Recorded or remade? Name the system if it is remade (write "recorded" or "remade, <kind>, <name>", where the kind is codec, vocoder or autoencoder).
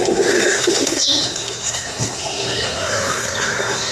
remade, codec, SNAC